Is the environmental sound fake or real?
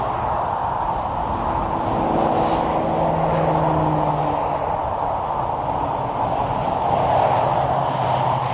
real